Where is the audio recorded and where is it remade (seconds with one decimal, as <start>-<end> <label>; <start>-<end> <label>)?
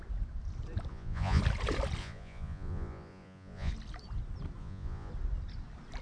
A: 0.0-0.9 recorded; 0.9-1.4 remade; 1.4-2.0 recorded; 2.0-3.7 remade; 3.7-4.6 recorded; 4.6-5.1 remade; 5.1-6.0 recorded